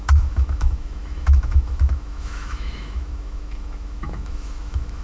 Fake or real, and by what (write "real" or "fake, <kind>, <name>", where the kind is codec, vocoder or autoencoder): fake, autoencoder, DAC-VAE